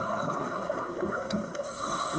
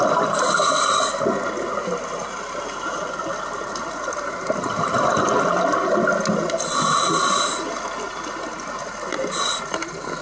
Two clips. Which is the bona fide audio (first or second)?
second